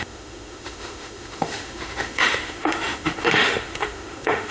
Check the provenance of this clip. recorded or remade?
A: remade